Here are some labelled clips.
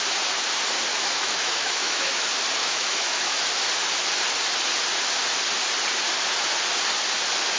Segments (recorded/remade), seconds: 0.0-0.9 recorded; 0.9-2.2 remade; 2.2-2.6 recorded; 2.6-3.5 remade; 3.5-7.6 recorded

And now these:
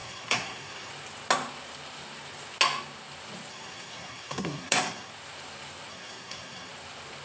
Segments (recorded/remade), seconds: 0.0-0.9 remade; 0.9-3.5 recorded; 3.5-5.1 remade; 5.1-5.9 recorded; 5.9-6.7 remade; 6.7-7.2 recorded

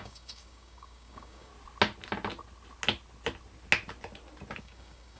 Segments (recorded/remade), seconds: 0.0-1.5 remade; 1.5-4.6 recorded; 4.6-5.2 remade